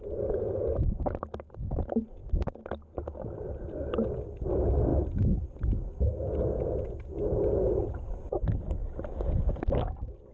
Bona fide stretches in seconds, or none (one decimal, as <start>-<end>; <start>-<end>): 0.0-10.3